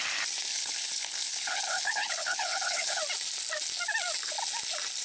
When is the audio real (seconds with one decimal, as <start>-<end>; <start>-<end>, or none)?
0.0-0.5; 3.0-5.0